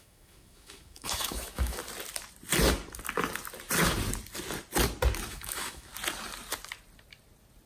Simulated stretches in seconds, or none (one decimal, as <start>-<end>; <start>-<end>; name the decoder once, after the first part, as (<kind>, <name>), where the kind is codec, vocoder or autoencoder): 0.0-1.8 (autoencoder, DAC-VAE); 5.3-5.9